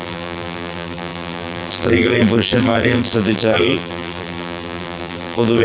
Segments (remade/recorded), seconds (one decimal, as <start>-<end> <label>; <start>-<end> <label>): 0.0-5.6 remade

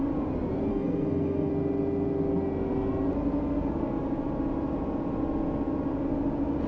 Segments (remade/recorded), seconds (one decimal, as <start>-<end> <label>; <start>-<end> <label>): 0.0-0.7 recorded; 0.7-1.5 remade; 1.5-6.7 recorded

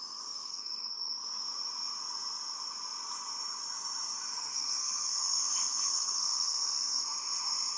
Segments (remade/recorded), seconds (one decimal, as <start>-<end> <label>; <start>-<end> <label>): 0.0-0.5 recorded; 0.5-1.2 remade; 1.2-4.3 recorded; 4.3-7.0 remade; 7.0-7.8 recorded

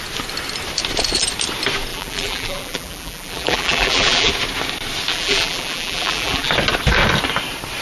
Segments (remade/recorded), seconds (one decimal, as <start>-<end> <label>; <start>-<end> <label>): 0.0-1.9 recorded; 1.9-4.3 remade; 4.3-5.1 recorded; 5.1-6.5 remade; 6.5-7.8 recorded

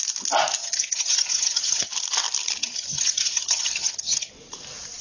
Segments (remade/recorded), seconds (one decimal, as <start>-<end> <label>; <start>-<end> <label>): 0.0-0.6 recorded; 0.6-1.9 remade; 1.9-2.6 recorded; 2.6-4.3 remade; 4.3-5.0 recorded

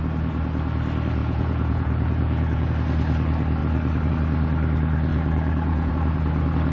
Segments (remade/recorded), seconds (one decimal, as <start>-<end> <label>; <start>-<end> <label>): 0.0-1.2 recorded; 1.2-2.7 remade; 2.7-5.1 recorded; 5.1-5.9 remade; 5.9-6.7 recorded

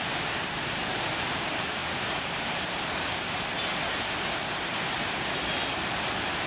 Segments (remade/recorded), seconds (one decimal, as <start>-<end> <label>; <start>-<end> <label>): 0.0-1.8 recorded; 1.8-3.6 remade; 3.6-6.5 recorded